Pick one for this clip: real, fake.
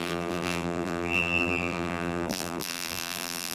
fake